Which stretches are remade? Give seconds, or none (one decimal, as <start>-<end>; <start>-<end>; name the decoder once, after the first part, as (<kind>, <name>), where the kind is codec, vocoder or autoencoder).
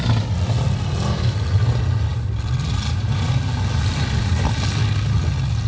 none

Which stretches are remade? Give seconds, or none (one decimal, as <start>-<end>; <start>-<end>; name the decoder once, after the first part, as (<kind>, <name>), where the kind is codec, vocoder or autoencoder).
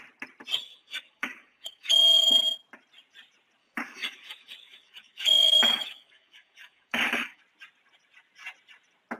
0.6-2.3 (codec, DAC); 3.6-7.4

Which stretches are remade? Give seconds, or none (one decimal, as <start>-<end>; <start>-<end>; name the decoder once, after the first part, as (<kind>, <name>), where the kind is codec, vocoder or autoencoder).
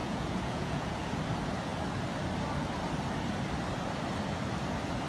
0.0-1.2 (vocoder, Vocos)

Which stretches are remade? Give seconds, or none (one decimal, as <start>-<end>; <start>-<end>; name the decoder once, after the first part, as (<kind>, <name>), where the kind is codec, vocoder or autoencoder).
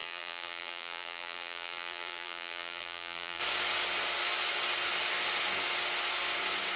0.0-3.4 (vocoder, BigVGAN v2)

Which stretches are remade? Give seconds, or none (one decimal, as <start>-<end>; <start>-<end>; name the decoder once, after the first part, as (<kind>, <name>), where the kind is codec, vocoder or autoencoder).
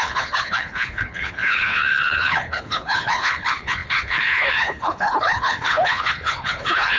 0.0-7.0 (codec, HILCodec)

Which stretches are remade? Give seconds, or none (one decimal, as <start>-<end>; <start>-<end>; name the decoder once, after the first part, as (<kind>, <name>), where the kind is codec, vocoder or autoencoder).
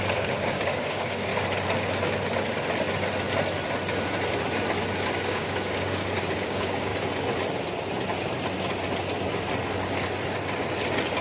0.0-1.3 (codec, DAC); 5.2-6.9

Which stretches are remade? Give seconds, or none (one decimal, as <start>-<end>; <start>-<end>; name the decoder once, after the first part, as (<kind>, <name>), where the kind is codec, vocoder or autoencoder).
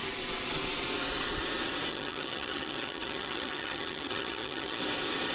1.9-4.8 (vocoder, HiFi-GAN)